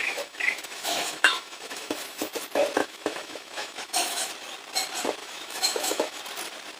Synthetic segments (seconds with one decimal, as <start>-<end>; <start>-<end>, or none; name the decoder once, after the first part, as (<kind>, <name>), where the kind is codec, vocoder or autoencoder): 0.0-2.3 (autoencoder, DAC-VAE); 2.8-4.3; 5.2-6.2